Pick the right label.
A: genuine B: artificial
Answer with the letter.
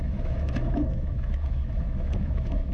B